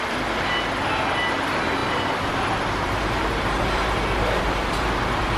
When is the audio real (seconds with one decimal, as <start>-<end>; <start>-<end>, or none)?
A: 0.0-5.4